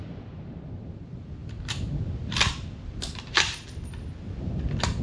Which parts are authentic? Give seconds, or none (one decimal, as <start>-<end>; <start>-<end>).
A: 0.0-5.0